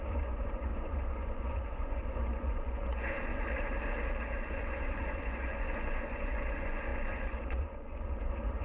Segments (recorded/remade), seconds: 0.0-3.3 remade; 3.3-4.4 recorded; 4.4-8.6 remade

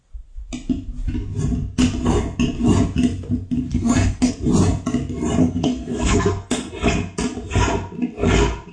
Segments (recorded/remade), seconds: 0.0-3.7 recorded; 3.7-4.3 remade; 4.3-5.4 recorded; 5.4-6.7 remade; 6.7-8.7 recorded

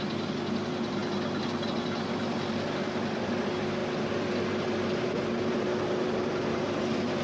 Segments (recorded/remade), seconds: 0.0-7.2 recorded

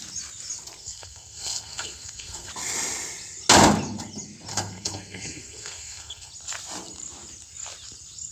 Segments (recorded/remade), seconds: 0.0-0.8 recorded; 0.8-2.5 remade; 2.5-4.5 recorded; 4.5-6.3 remade; 6.3-8.3 recorded